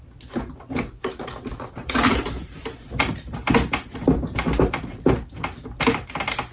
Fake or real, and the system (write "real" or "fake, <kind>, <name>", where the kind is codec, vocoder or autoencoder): real